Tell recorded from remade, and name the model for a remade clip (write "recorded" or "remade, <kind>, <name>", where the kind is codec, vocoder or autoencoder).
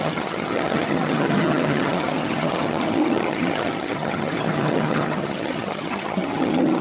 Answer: remade, vocoder, HiFi-GAN